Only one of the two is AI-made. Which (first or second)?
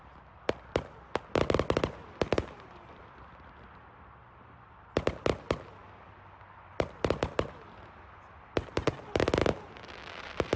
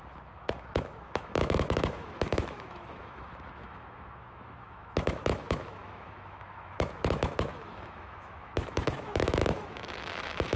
second